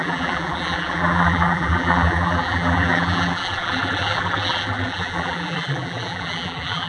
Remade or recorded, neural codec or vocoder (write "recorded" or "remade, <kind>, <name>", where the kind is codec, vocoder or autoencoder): remade, vocoder, BigVGAN v2